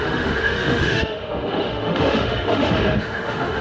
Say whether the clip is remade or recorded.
remade